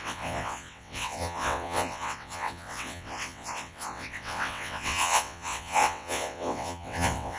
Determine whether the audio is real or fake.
fake